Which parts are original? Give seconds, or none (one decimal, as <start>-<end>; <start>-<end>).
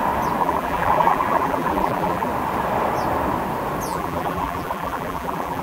0.0-0.4; 2.3-3.9